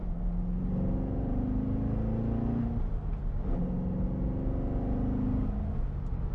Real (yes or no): yes